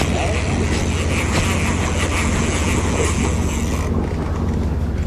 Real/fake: real